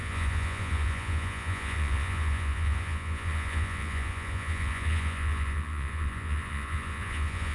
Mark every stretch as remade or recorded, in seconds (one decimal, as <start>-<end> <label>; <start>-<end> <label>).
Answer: 0.0-7.5 remade